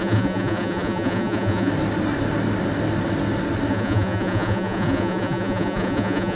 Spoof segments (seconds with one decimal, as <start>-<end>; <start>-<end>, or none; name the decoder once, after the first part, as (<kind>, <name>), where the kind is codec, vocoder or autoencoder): 0.0-1.7 (vocoder, Vocos); 3.7-6.4